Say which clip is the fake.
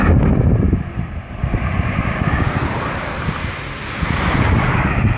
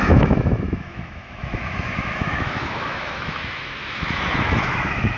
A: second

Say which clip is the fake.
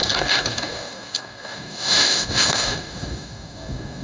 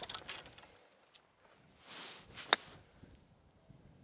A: first